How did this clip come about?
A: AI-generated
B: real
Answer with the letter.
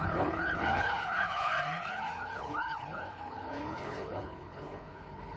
A